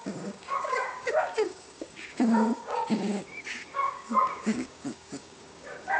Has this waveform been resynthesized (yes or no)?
yes